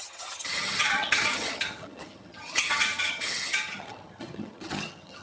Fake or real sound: fake